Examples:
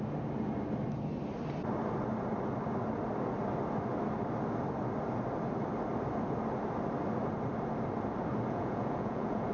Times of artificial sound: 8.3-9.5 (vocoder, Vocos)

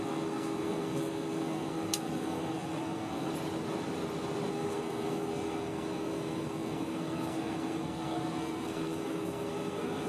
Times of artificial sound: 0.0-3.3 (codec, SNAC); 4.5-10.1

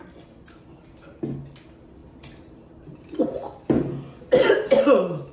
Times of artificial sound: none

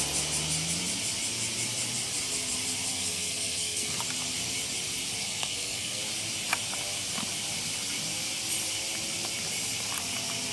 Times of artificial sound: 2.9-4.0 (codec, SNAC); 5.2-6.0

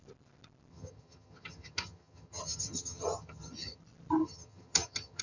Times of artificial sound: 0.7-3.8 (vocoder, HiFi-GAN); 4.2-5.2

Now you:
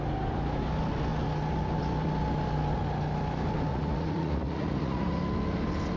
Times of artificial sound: 3.7-5.1 (vocoder, Vocos)

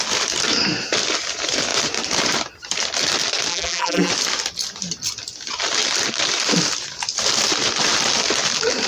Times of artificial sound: 3.5-4.1 (vocoder, BigVGAN v2)